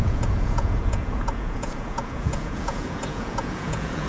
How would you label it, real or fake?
fake